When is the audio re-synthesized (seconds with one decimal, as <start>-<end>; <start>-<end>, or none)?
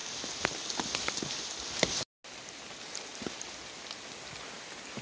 none